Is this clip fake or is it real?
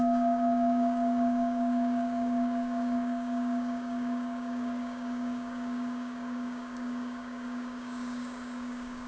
fake